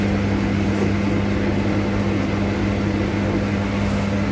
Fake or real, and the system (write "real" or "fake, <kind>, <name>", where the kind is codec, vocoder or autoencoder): real